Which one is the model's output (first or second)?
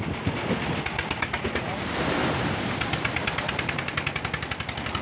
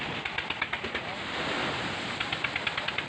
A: first